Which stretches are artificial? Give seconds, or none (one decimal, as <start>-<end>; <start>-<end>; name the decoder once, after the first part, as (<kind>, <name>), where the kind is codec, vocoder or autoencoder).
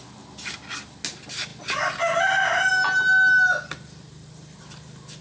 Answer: none